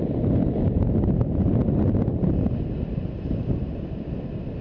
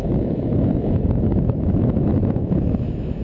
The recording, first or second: first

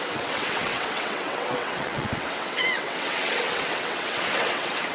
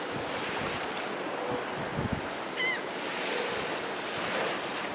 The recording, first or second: second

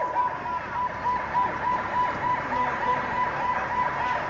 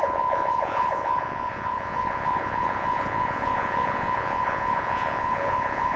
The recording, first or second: first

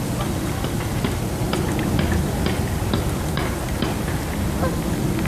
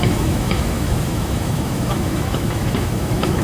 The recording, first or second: first